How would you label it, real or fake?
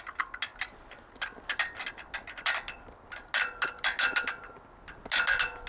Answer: real